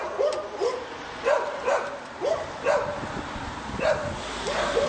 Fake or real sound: real